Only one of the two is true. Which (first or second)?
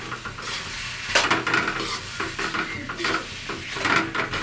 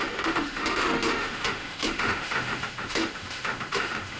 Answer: first